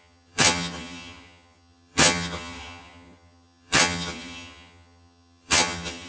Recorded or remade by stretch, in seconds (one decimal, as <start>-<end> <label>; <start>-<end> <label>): 0.0-6.1 remade